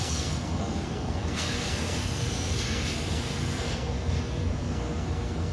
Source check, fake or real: fake